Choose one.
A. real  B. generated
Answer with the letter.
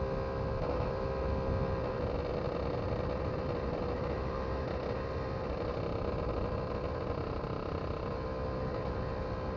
A